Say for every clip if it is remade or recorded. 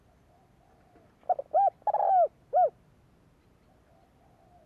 recorded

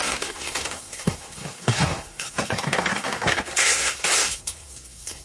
remade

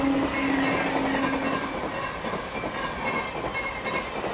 recorded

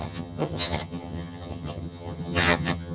remade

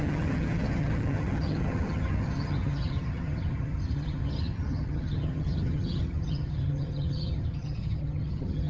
remade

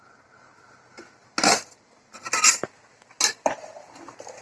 recorded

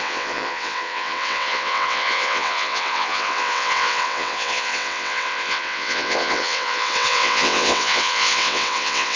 remade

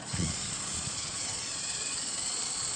remade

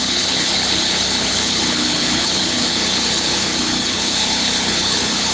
remade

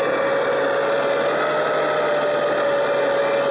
recorded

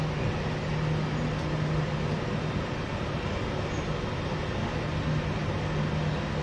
recorded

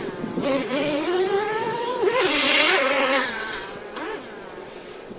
remade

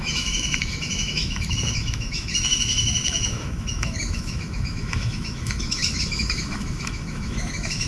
remade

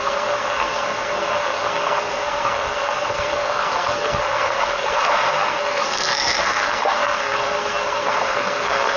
remade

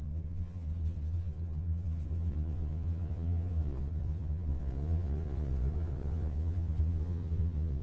remade